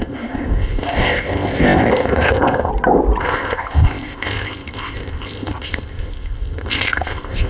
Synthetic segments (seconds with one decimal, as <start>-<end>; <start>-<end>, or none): 0.0-2.7; 3.2-7.5